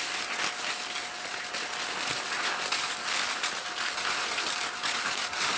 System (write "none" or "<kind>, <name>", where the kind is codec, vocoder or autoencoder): none